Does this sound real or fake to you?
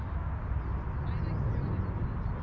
real